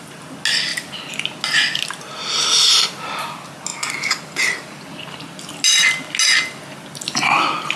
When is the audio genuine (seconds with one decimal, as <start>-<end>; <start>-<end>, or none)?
0.0-7.8